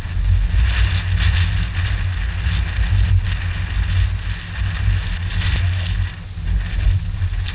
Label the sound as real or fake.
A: real